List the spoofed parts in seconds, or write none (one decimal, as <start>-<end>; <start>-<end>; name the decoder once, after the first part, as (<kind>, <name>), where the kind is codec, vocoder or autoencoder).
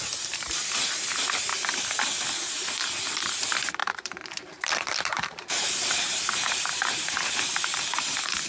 3.8-7.3 (vocoder, BigVGAN v2); 7.7-8.5